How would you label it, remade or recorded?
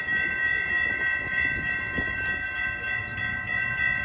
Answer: recorded